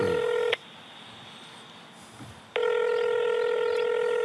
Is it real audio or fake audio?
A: real